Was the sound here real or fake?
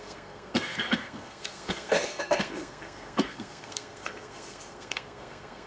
fake